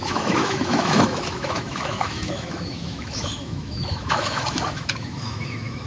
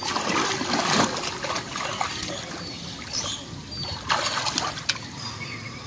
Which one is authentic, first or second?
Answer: second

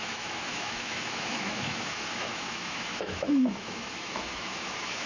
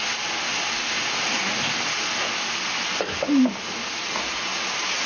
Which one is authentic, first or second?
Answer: second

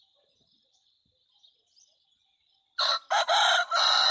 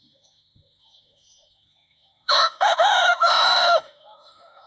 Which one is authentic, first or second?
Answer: first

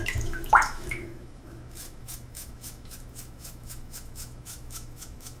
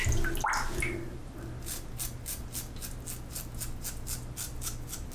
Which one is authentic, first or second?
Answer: second